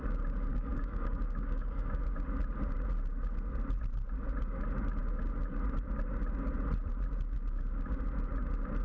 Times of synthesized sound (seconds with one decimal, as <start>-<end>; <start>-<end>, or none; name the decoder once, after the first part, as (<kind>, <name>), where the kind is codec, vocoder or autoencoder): 0.5-2.0 (codec, DAC)